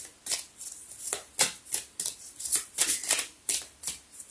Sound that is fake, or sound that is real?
real